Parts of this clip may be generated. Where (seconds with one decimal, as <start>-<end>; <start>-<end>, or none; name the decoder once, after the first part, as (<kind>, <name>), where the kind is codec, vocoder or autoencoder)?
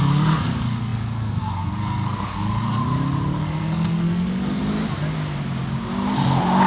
0.0-2.8 (codec, SNAC); 3.4-4.6